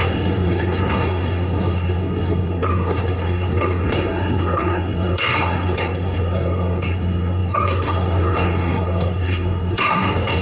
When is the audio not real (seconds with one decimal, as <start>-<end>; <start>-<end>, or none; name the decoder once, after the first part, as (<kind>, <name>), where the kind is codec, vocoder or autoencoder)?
0.0-10.4 (codec, SNAC)